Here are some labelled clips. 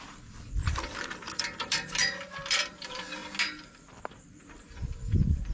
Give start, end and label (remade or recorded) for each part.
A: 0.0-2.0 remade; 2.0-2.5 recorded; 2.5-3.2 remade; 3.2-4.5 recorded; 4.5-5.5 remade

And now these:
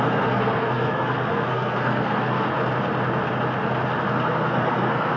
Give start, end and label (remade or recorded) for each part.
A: 0.0-2.5 remade; 2.5-4.1 recorded; 4.1-5.2 remade

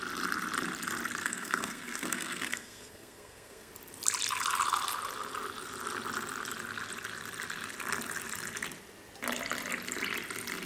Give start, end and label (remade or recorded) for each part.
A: 0.0-1.2 recorded; 1.2-3.7 remade; 3.7-10.7 recorded